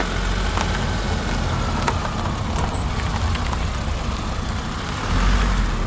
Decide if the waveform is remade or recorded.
recorded